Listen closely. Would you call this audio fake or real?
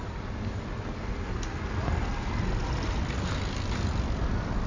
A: real